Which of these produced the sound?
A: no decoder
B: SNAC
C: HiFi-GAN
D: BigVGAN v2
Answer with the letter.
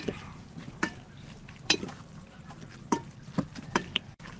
D